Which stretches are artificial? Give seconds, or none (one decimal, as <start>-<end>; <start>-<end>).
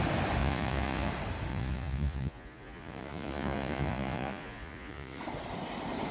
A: 0.4-1.1; 1.5-5.2